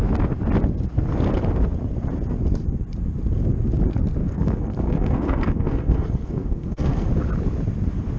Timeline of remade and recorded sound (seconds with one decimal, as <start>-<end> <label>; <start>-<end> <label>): 0.0-4.2 recorded; 4.2-7.1 remade; 7.1-8.2 recorded